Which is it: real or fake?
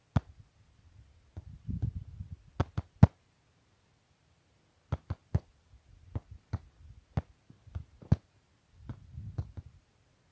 real